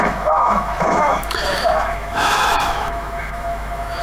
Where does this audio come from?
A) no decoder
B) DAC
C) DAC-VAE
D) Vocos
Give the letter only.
C